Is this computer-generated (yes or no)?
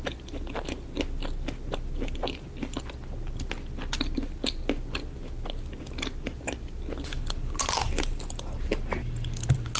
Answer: no